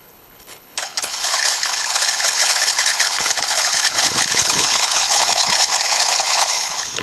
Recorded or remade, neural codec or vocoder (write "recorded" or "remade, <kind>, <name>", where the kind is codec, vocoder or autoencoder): remade, codec, HILCodec